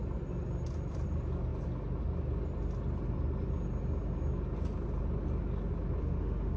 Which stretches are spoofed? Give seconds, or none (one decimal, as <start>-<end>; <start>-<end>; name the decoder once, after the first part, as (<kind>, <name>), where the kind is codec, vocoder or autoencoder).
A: 6.0-6.6 (autoencoder, DAC-VAE)